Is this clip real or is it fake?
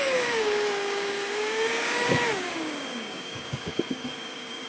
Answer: fake